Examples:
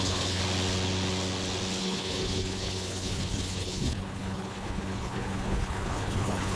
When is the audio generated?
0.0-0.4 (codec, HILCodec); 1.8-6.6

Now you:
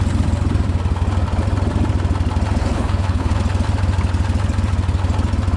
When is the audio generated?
2.6-3.4 (codec, HILCodec)